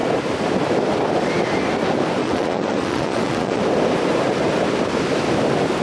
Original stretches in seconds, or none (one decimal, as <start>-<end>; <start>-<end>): 0.0-2.2; 3.6-5.8